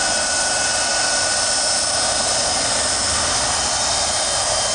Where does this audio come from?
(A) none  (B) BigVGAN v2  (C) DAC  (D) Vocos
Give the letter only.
A